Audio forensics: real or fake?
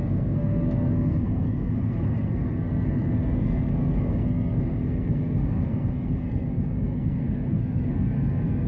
fake